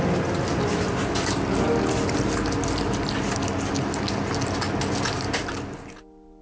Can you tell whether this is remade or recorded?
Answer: recorded